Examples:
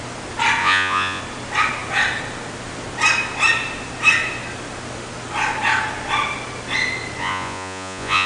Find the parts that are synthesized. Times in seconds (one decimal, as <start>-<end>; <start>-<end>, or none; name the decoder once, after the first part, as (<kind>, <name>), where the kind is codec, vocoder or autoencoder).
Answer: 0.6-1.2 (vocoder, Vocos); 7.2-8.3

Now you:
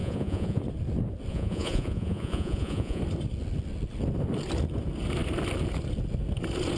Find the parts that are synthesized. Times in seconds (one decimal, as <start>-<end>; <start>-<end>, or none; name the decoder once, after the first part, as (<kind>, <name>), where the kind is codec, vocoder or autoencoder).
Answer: 0.0-0.6 (vocoder, Vocos); 1.3-3.0

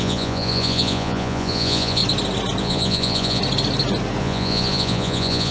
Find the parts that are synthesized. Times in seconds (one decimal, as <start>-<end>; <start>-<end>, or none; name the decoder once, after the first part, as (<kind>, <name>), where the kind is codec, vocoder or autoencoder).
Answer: 0.0-2.0 (vocoder, Vocos); 2.6-3.4; 4.2-5.5